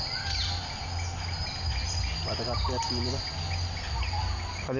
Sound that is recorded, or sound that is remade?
recorded